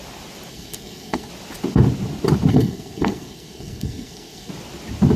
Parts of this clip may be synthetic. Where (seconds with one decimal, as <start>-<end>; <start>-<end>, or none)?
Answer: 0.5-1.3; 2.5-4.5